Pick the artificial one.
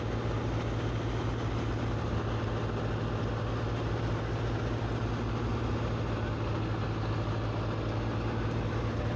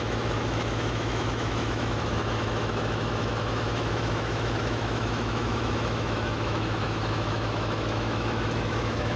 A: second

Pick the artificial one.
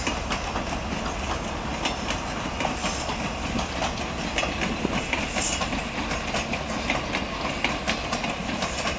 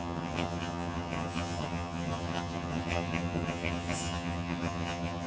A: second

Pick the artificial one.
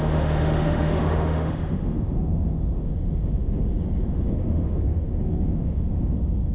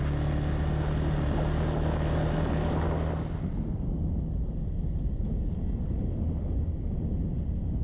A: first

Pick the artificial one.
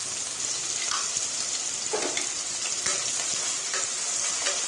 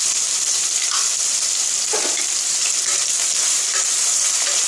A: second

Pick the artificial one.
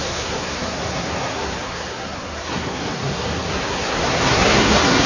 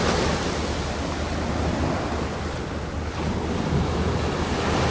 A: first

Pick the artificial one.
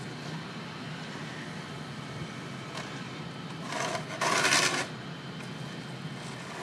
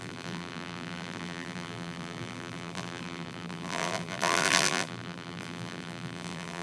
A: second